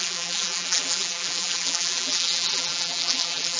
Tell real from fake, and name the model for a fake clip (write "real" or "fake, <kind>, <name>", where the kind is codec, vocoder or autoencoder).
fake, vocoder, BigVGAN v2